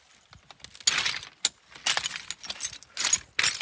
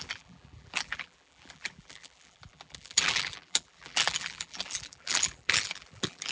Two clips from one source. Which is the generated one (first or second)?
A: second